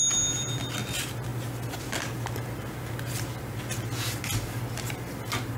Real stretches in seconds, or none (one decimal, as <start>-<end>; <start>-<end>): 0.0-5.6